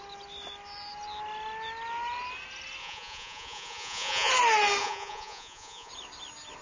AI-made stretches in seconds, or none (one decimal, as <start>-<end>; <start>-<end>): 2.8-4.3; 4.8-5.9